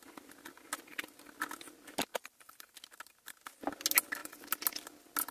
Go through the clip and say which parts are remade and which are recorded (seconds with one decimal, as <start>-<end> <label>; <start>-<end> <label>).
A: 0.0-2.1 recorded; 2.1-2.7 remade; 2.7-5.3 recorded